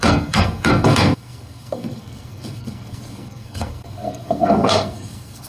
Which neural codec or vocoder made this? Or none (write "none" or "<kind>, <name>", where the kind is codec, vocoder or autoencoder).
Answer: codec, SNAC